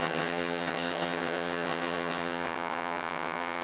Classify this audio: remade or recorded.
remade